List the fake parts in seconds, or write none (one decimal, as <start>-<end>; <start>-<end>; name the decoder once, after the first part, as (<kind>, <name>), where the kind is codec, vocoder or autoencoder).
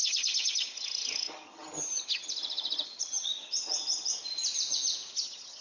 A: 0.0-4.1 (vocoder, HiFi-GAN); 5.1-5.6